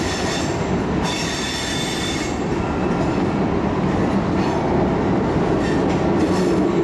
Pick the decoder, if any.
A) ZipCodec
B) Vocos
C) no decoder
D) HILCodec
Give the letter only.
C